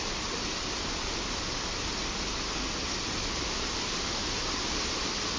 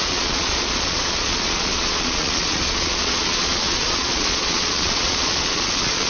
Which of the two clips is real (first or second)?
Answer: first